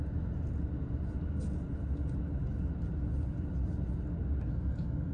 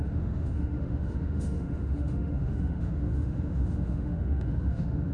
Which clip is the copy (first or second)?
second